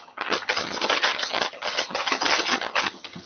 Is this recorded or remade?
remade